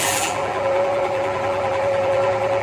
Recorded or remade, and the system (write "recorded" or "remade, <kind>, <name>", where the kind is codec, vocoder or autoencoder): remade, vocoder, BigVGAN v2